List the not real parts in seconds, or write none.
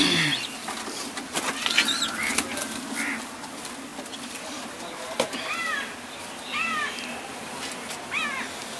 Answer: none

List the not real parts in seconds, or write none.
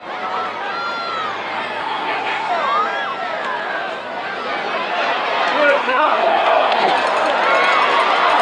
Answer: 1.8-2.5 (codec, SNAC); 5.8-6.9